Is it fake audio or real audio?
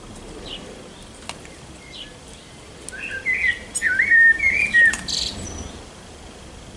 real